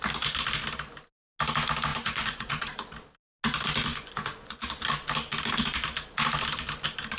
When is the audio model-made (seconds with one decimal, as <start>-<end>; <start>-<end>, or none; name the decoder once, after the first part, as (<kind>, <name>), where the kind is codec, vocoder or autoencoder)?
1.9-2.6 (vocoder, Vocos); 3.9-4.6